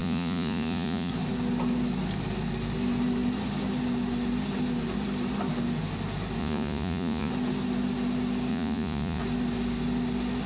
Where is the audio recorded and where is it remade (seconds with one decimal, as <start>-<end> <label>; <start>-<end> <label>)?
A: 0.0-1.1 remade; 1.1-6.4 recorded; 6.4-7.3 remade; 7.3-8.5 recorded; 8.5-9.2 remade; 9.2-10.5 recorded